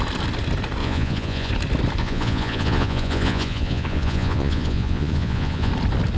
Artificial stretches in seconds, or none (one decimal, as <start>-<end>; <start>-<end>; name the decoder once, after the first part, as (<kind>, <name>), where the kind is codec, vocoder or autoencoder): 0.8-1.5 (vocoder, Vocos); 2.0-5.7